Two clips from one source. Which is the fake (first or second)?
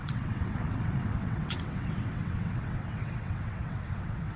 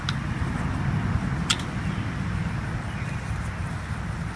first